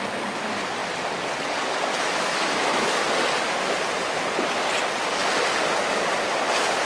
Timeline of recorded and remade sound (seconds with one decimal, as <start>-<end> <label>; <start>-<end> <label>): 0.0-1.9 recorded; 1.9-3.0 remade; 3.0-6.9 recorded